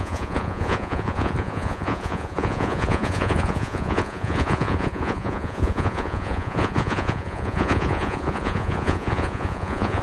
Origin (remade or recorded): remade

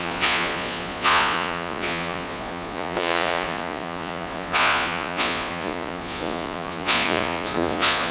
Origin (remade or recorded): remade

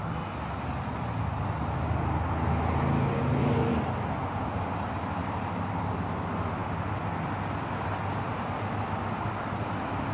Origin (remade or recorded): recorded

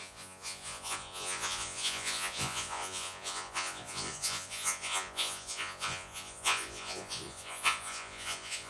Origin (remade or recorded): remade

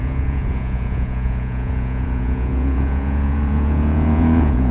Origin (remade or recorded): remade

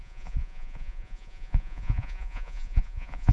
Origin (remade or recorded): remade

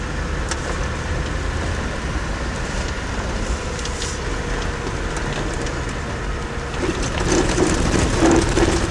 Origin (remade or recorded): recorded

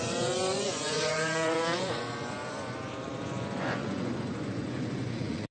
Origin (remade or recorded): remade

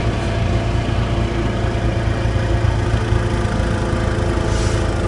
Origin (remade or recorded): recorded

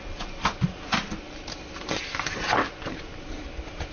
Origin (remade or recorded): recorded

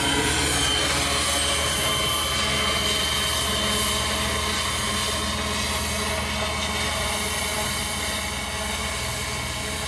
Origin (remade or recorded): recorded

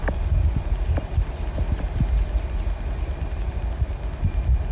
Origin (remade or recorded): recorded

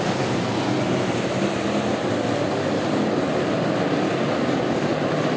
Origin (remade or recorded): recorded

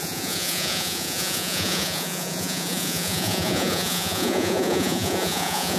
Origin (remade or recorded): remade